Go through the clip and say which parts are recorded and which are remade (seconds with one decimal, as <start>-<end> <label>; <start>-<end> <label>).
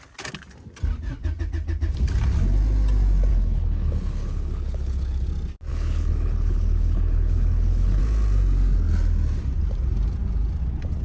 0.0-3.3 recorded; 3.3-5.3 remade; 5.3-5.7 recorded; 5.7-8.0 remade; 8.0-11.0 recorded